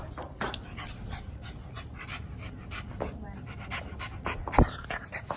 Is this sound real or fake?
real